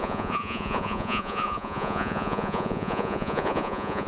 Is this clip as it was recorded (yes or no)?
no